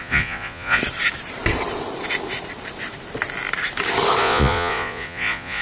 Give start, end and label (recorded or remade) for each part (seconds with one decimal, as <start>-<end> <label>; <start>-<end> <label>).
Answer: 0.0-0.8 remade; 0.8-4.2 recorded; 4.2-5.6 remade